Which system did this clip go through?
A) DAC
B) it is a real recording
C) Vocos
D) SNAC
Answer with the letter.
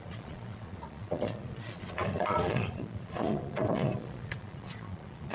C